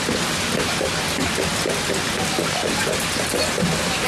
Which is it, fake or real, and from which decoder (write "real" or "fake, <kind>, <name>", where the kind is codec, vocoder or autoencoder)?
real